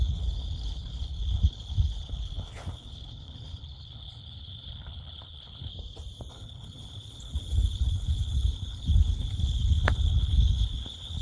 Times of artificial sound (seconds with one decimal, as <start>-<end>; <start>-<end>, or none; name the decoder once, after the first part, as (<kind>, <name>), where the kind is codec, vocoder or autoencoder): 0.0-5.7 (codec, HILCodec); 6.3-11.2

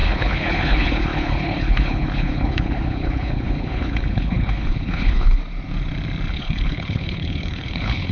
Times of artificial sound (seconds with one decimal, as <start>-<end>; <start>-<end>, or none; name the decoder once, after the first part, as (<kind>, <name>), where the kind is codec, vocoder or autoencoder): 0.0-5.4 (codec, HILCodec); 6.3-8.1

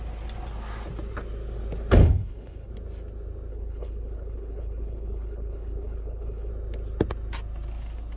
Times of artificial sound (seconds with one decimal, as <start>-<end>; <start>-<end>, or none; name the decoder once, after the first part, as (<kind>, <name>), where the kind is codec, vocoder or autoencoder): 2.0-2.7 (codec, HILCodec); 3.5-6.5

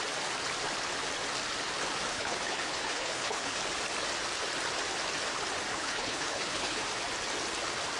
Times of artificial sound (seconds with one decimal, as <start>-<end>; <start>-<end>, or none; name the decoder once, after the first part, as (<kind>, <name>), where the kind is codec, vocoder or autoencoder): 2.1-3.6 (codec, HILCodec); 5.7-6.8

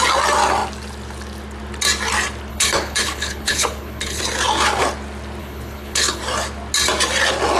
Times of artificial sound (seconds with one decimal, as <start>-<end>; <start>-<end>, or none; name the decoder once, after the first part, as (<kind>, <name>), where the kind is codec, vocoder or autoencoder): 2.5-4.2 (codec, HILCodec); 5.4-6.2